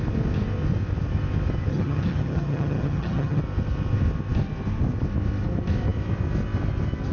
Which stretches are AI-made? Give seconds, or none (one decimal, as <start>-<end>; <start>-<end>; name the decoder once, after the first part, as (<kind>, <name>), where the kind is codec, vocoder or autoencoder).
1.7-3.4 (vocoder, HiFi-GAN)